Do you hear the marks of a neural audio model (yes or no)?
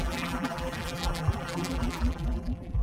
yes